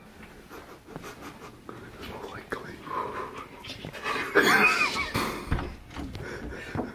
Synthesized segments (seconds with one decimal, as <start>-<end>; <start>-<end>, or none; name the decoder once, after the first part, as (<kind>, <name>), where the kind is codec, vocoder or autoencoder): none